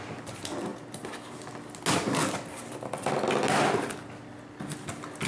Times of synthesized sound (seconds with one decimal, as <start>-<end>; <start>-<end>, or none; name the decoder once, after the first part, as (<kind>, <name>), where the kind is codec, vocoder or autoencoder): none